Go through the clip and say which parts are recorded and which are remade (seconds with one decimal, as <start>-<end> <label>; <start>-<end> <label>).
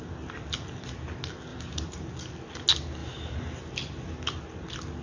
0.0-1.5 recorded; 1.5-2.1 remade; 2.1-3.0 recorded; 3.0-3.7 remade; 3.7-5.0 recorded